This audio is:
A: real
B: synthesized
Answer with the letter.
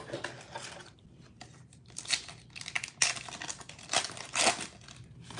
A